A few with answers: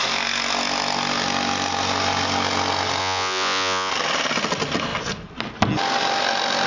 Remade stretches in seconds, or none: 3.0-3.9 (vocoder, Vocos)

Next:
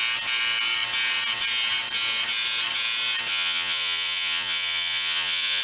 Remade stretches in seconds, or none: 3.3-5.6 (vocoder, Vocos)